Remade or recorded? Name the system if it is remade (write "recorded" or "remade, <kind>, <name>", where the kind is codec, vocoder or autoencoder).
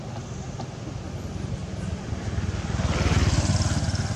recorded